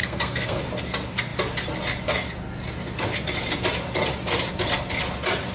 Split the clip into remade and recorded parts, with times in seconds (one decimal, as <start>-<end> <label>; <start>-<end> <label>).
0.0-0.6 remade; 0.6-5.5 recorded